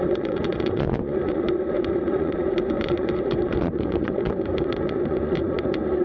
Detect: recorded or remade remade